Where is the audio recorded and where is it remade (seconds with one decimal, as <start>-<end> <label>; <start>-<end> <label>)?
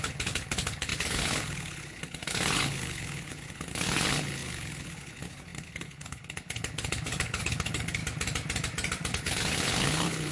0.0-8.0 remade; 8.0-9.1 recorded; 9.1-10.3 remade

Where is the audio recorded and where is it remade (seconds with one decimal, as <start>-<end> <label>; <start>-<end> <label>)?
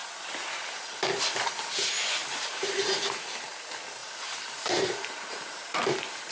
0.0-2.2 recorded; 2.2-3.2 remade; 3.2-4.0 recorded; 4.0-5.8 remade; 5.8-6.3 recorded